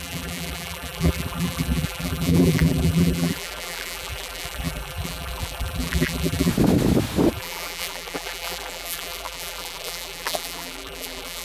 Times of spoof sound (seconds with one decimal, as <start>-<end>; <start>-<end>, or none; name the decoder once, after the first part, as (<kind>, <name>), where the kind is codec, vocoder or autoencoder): 0.0-6.5 (vocoder, BigVGAN v2); 7.3-11.4